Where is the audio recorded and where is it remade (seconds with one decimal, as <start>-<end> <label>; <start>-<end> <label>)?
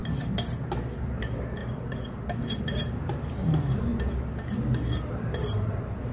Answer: 0.0-1.0 recorded; 1.0-1.6 remade; 1.6-2.6 recorded; 2.6-3.9 remade; 3.9-5.1 recorded; 5.1-6.1 remade